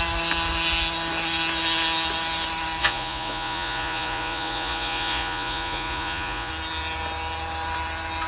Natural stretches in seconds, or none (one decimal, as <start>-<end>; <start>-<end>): 0.0-2.8; 6.5-8.3